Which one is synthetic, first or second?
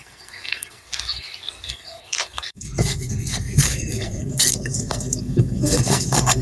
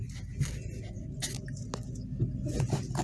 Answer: first